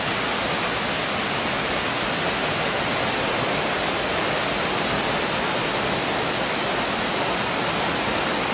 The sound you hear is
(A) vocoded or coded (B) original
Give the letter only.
B